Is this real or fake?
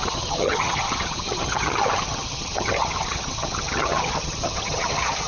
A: fake